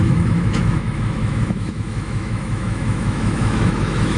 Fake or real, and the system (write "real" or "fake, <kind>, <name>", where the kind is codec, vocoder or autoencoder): fake, autoencoder, DAC-VAE